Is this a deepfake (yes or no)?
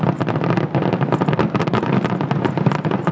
no